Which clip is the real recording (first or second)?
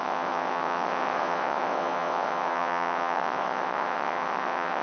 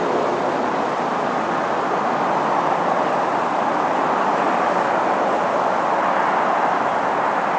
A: second